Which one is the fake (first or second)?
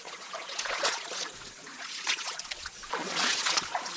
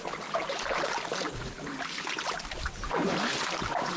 first